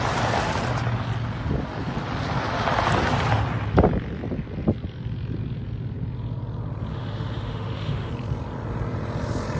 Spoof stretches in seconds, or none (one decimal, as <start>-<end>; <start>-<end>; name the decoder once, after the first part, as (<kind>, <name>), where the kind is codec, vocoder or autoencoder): 6.9-8.1 (autoencoder, DAC-VAE)